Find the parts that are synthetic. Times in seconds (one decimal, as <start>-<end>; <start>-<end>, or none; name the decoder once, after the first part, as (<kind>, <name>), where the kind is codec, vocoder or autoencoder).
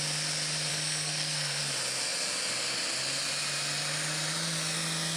0.7-1.6 (codec, SNAC)